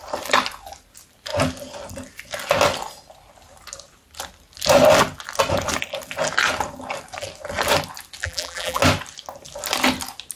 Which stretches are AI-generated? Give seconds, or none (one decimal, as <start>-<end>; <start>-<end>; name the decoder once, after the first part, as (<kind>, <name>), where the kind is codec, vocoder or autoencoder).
8.2-8.8 (vocoder, BigVGAN v2)